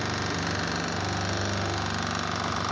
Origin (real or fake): real